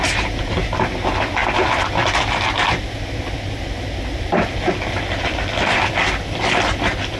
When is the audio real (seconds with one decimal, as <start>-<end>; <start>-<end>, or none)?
0.0-7.2